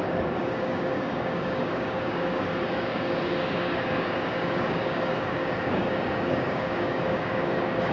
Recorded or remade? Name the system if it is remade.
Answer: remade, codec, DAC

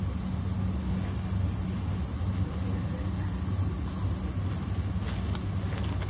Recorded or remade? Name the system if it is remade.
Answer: recorded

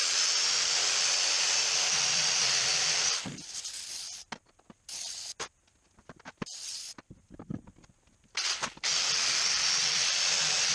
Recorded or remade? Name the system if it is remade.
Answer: recorded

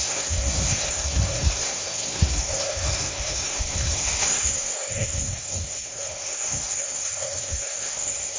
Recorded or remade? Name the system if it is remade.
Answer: remade, codec, SNAC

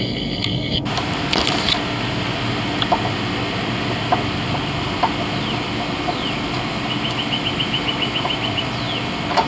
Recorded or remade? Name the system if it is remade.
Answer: recorded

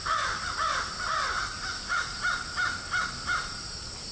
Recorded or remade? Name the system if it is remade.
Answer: recorded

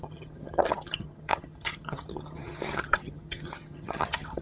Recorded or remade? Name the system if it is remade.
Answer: remade, vocoder, HiFi-GAN